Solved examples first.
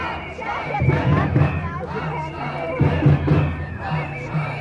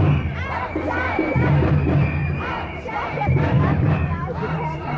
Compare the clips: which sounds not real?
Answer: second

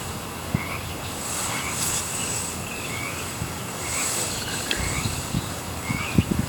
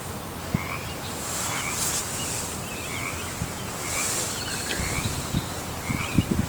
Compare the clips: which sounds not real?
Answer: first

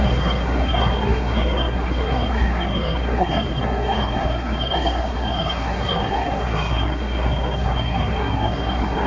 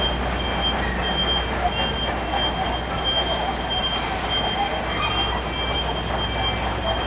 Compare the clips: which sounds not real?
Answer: first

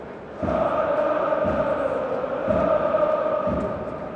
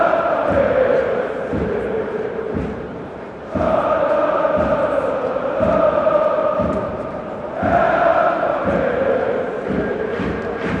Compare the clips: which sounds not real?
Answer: second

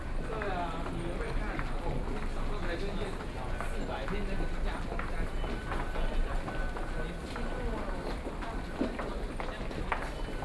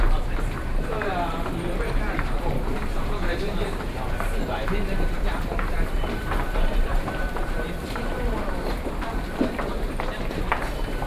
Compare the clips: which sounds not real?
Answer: second